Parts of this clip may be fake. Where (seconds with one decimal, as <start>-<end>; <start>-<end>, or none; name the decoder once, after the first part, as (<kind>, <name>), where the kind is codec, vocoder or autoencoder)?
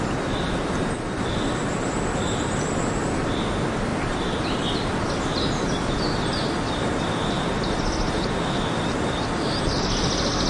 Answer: none